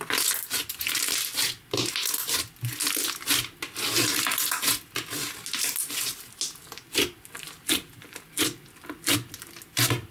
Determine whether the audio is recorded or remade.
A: recorded